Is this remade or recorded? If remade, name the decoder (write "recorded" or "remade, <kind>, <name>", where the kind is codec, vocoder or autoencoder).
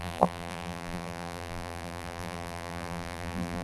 remade, vocoder, BigVGAN v2